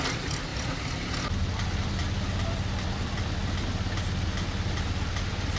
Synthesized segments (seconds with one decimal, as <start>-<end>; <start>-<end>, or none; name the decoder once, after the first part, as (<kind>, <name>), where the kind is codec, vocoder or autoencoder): 0.0-2.0 (vocoder, BigVGAN v2); 2.8-3.4; 5.1-5.6